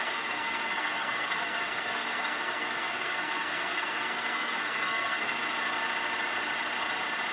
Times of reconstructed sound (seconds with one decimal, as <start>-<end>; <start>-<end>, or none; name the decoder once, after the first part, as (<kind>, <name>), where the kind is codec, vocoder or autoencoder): 0.0-5.4 (codec, SNAC)